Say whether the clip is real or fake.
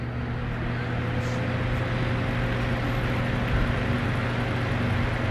real